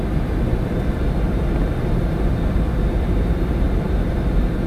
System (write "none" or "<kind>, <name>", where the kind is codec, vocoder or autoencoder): none